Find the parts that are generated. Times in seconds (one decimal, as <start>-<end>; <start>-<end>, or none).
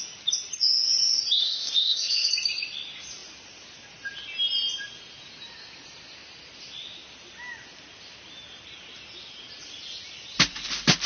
1.4-2.3